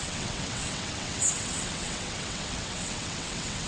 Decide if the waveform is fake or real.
fake